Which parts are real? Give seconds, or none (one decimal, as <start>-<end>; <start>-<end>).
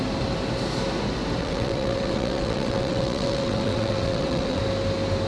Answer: 0.0-1.4; 4.6-5.3